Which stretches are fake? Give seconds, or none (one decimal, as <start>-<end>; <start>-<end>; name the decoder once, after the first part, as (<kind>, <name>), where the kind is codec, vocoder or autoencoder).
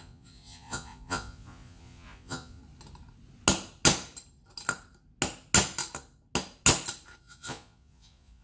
0.0-2.6 (vocoder, Vocos); 7.2-8.4